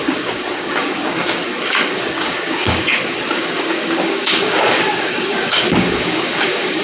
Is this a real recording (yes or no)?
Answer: no